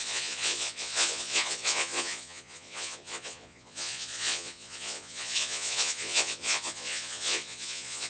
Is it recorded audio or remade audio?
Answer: remade